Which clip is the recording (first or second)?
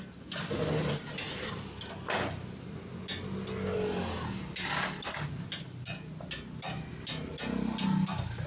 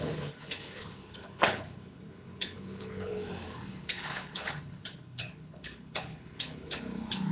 first